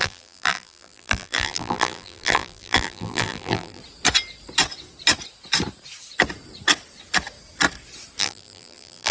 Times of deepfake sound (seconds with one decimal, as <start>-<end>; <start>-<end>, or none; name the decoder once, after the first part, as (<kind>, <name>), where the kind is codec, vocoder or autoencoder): 0.0-3.8 (vocoder, BigVGAN v2); 8.2-9.1

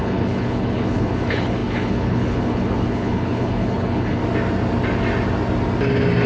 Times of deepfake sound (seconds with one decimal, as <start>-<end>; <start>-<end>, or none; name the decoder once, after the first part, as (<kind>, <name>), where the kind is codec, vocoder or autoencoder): 0.0-4.2 (codec, HILCodec)

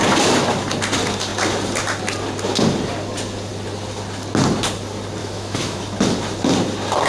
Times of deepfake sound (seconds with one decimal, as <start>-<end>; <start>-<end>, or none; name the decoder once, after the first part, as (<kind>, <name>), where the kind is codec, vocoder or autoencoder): 5.2-5.8 (autoencoder, DAC-VAE)

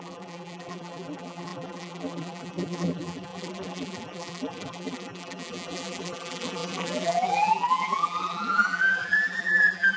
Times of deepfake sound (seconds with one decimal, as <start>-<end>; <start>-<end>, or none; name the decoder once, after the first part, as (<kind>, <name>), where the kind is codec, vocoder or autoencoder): 0.0-10.0 (vocoder, BigVGAN v2)

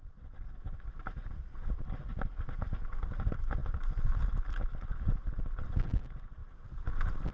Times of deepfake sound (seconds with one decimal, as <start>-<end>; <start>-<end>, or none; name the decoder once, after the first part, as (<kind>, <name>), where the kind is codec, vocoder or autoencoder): 3.6-4.2 (vocoder, BigVGAN v2); 6.4-7.3

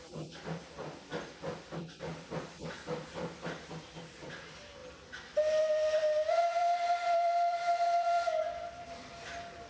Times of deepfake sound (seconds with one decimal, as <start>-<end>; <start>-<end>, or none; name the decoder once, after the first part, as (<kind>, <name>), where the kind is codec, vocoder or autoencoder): 0.0-4.8 (vocoder, BigVGAN v2); 5.6-9.7

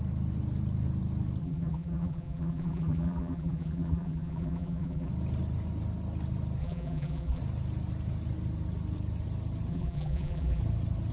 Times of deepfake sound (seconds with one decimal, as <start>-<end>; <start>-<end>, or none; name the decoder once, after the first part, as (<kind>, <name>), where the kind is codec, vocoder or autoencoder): 1.4-5.1 (vocoder, BigVGAN v2); 6.6-7.4; 9.7-10.6

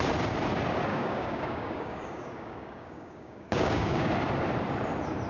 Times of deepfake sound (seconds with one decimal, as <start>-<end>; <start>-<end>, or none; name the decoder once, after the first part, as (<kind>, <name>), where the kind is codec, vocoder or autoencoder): 0.9-4.1 (codec, DAC)